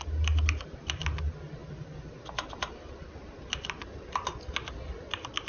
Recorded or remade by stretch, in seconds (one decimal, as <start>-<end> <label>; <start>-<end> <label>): 0.0-5.5 recorded